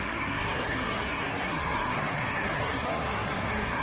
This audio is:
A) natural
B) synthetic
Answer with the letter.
B